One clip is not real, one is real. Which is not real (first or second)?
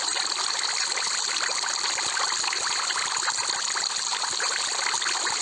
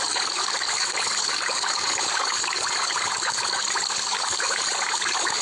second